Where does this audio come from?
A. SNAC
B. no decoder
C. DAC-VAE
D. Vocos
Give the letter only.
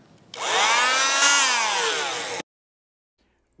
B